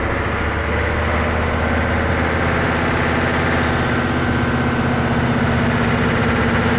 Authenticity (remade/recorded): recorded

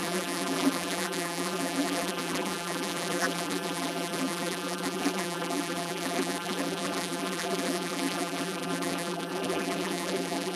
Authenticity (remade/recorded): remade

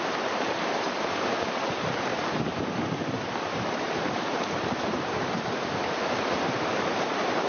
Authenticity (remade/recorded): remade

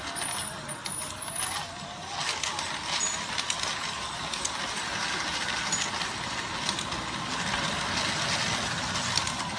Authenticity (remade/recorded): recorded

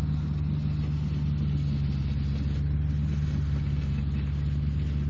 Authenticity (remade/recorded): recorded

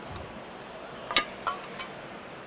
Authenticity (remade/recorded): remade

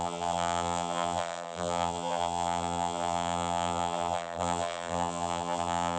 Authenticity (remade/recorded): remade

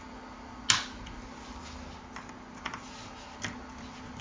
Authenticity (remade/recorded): recorded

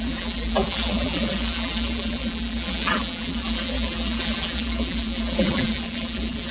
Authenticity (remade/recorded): remade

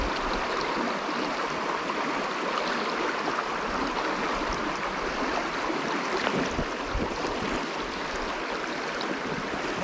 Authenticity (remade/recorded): recorded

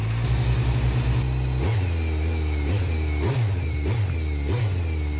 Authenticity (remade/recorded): recorded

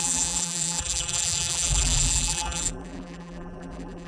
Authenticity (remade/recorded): remade